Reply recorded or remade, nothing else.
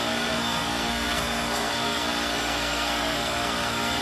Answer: remade